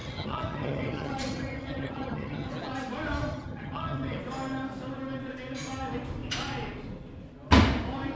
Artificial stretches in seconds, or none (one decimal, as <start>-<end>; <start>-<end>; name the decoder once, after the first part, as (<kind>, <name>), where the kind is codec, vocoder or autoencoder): 0.0-2.5 (vocoder, HiFi-GAN); 3.3-4.2